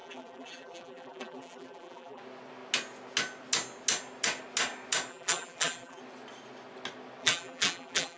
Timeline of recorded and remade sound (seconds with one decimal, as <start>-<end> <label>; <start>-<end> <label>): 0.0-2.2 remade; 2.2-5.1 recorded; 5.1-6.0 remade; 6.0-7.2 recorded; 7.2-8.2 remade